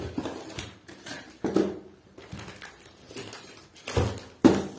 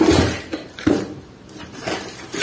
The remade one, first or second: second